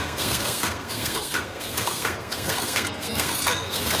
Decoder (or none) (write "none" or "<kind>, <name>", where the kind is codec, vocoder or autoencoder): codec, SNAC